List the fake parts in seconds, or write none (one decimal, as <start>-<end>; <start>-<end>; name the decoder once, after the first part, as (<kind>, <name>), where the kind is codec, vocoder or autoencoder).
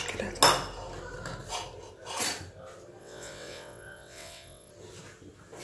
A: 3.0-4.7 (vocoder, WaveNeXt)